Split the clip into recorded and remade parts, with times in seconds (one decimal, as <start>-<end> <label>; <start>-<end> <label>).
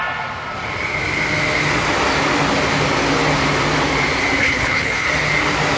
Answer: 0.0-4.4 recorded; 4.4-5.1 remade; 5.1-5.8 recorded